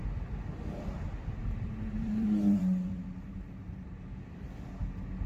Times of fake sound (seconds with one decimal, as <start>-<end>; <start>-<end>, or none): 1.4-4.6